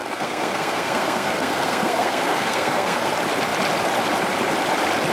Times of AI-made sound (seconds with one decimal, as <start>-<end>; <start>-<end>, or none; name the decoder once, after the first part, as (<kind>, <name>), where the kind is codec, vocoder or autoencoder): 0.0-3.1 (codec, SNAC)

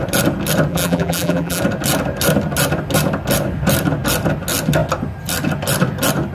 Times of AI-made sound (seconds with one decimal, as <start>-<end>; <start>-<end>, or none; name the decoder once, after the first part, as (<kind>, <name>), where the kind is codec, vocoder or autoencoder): 0.7-1.6 (vocoder, BigVGAN v2)

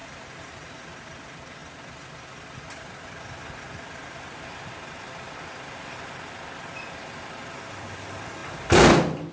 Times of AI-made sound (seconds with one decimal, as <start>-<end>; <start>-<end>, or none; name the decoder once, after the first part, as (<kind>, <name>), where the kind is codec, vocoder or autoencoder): 0.0-8.4 (vocoder, BigVGAN v2)